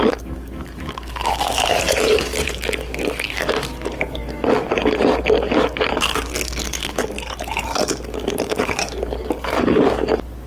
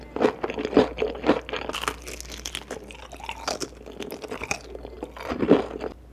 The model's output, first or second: first